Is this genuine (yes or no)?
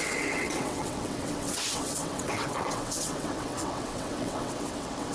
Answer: no